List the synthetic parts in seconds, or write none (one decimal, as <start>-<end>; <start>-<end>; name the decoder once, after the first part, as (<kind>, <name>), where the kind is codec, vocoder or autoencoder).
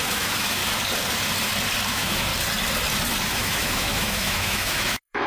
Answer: 0.0-0.6 (autoencoder, DAC-VAE); 1.9-2.3; 3.3-5.3